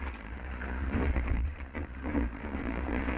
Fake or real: fake